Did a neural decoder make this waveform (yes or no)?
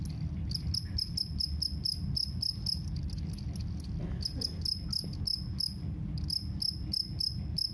no